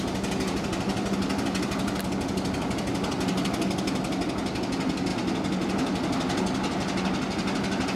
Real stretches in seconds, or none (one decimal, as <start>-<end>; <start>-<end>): 0.0-8.0